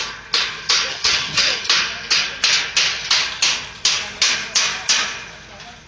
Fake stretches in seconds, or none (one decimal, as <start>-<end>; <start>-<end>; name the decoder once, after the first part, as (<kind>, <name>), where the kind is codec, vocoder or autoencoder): 0.9-1.6 (vocoder, HiFi-GAN)